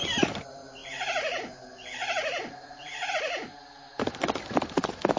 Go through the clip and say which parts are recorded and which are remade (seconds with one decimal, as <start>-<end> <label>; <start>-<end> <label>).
0.0-5.2 recorded